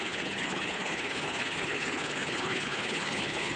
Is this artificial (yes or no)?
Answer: yes